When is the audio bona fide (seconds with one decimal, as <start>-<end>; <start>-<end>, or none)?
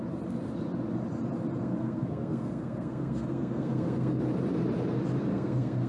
0.0-1.6; 4.2-5.3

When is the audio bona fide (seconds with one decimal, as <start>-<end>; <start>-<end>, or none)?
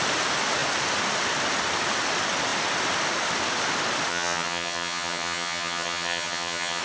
0.0-4.1